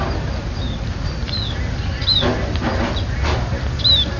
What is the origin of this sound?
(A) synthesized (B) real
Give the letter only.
B